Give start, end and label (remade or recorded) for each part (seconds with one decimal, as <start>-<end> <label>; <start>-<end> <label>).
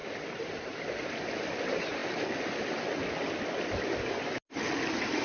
0.0-5.2 recorded